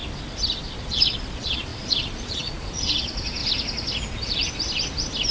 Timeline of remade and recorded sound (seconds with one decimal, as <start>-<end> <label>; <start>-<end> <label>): 0.0-0.8 recorded; 0.8-3.4 remade; 3.4-5.3 recorded